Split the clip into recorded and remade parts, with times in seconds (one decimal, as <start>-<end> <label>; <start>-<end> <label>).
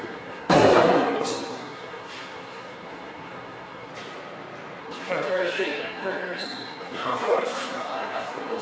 0.0-3.9 remade; 3.9-4.8 recorded; 4.8-8.6 remade